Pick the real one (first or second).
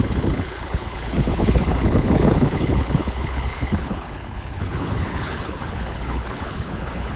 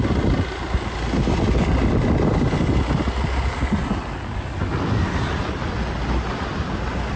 second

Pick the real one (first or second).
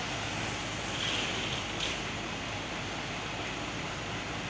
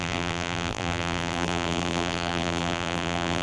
first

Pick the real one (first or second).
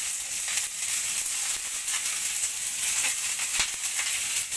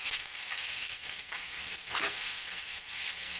first